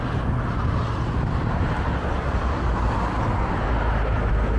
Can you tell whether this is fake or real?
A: real